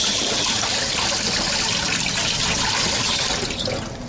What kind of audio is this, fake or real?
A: real